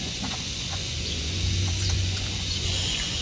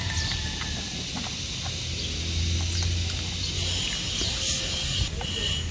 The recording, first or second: second